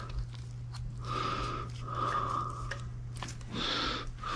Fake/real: real